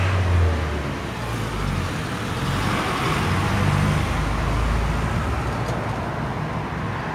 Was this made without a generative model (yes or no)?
yes